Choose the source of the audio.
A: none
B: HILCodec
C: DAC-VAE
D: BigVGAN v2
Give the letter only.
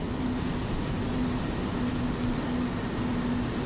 A